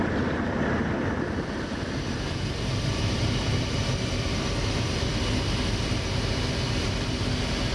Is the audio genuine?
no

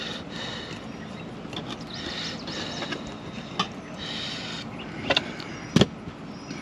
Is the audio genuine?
yes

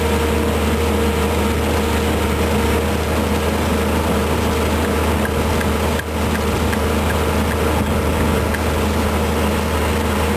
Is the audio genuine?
yes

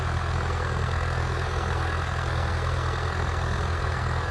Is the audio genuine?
no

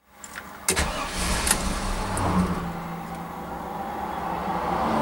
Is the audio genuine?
yes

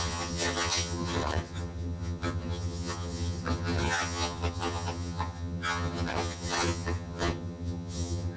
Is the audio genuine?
no